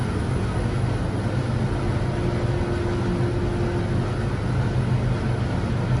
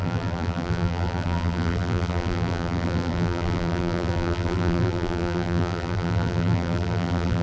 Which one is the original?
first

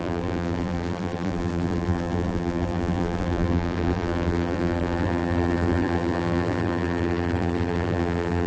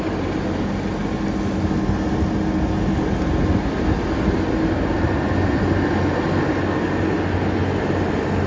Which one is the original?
second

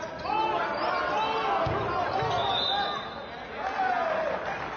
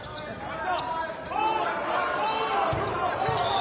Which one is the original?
first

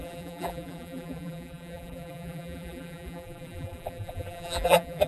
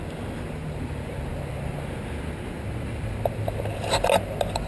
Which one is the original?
second